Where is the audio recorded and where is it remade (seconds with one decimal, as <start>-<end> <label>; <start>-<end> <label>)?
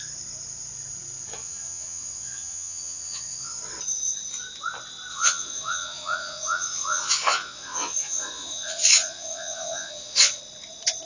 0.0-1.4 recorded; 1.4-3.6 remade; 3.6-5.1 recorded; 5.1-10.4 remade; 10.4-11.1 recorded